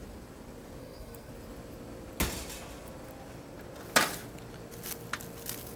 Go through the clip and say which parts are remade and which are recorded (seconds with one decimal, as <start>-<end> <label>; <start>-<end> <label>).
0.0-0.8 recorded; 0.8-1.3 remade; 1.3-5.8 recorded